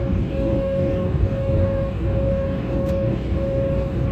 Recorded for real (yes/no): no